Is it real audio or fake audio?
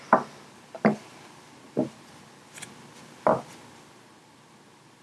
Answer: real